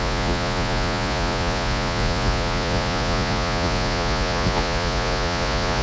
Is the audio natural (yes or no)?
no